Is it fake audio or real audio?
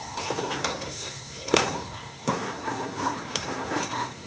fake